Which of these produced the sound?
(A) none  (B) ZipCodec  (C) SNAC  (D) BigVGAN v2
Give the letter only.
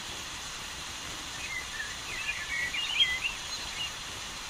D